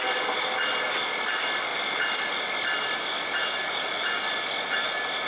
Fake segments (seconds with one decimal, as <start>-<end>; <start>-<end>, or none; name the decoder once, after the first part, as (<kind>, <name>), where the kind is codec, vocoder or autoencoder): 1.7-2.3 (vocoder, BigVGAN v2); 3.4-4.3